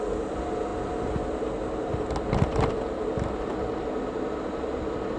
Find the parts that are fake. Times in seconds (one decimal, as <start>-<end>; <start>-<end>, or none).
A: none